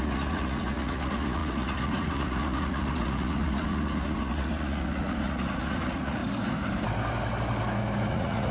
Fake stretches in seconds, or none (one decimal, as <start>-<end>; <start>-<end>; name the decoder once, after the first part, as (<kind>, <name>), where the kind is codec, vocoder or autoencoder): 0.0-6.2 (vocoder, Vocos); 8.1-8.5